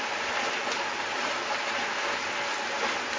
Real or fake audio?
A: real